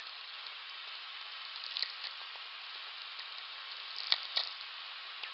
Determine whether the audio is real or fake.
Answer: real